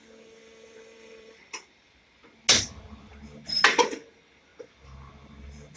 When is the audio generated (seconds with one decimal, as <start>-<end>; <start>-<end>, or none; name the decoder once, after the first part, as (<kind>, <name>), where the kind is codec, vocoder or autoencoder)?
0.4-1.9 (vocoder, BigVGAN v2); 2.5-3.1